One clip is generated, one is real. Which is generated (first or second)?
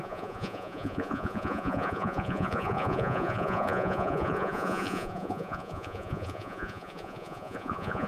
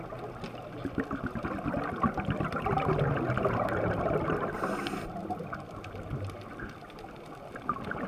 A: first